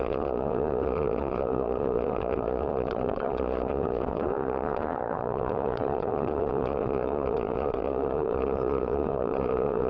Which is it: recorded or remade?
remade